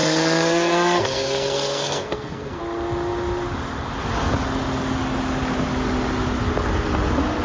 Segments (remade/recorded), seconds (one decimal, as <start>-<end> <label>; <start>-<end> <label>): 0.0-2.6 remade; 2.6-7.4 recorded